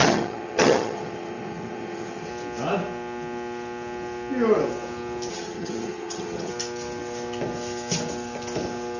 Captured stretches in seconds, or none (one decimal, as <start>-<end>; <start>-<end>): 2.3-5.3; 6.5-9.0